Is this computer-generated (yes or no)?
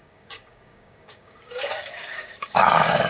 yes